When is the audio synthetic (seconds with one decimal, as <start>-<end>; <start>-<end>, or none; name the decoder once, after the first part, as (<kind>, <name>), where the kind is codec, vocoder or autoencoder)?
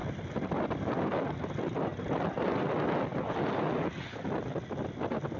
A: none